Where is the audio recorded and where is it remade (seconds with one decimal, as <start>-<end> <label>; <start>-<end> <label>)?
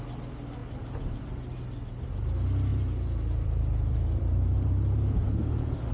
0.0-0.6 recorded; 0.6-1.2 remade; 1.2-2.7 recorded; 2.7-5.4 remade; 5.4-5.9 recorded